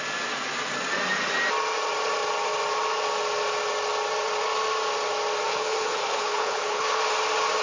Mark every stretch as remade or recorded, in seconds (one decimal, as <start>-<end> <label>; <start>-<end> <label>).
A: 0.0-5.5 recorded; 5.5-7.0 remade; 7.0-7.6 recorded